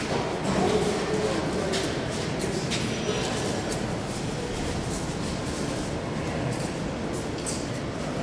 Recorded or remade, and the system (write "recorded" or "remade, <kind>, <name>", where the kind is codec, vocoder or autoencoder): recorded